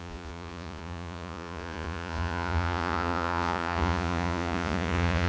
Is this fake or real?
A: fake